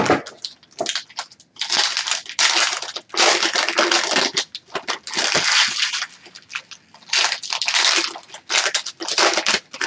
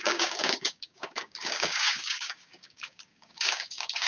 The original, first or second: first